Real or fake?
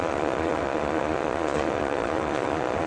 fake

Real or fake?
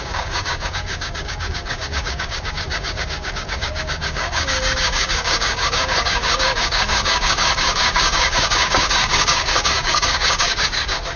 fake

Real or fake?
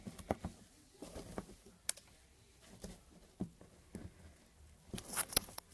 real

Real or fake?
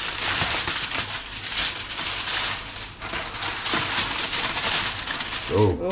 real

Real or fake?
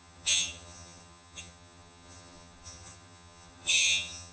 fake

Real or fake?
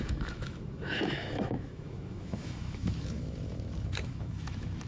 fake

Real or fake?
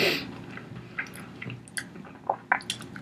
real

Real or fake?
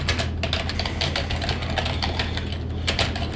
real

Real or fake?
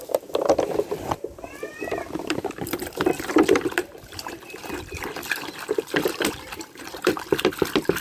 fake